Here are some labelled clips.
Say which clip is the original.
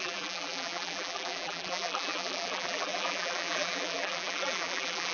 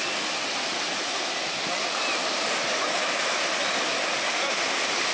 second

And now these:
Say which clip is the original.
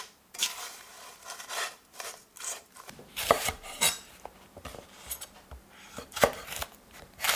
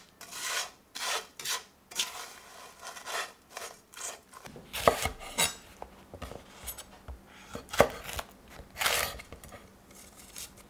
second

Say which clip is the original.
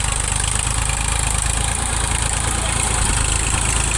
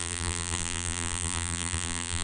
first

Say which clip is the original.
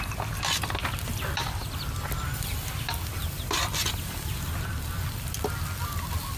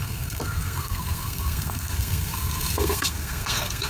first